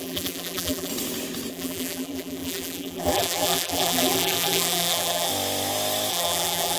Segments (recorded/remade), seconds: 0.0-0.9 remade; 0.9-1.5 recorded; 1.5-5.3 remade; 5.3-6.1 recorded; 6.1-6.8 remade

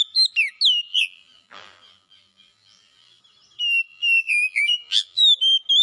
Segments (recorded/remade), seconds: 0.0-0.9 recorded; 0.9-3.2 remade; 3.2-3.9 recorded; 3.9-5.2 remade; 5.2-5.8 recorded

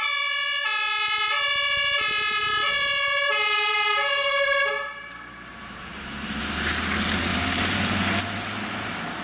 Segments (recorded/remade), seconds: 0.0-3.3 recorded; 3.3-4.7 remade; 4.7-5.5 recorded; 5.5-6.4 remade; 6.4-7.3 recorded; 7.3-8.2 remade; 8.2-9.2 recorded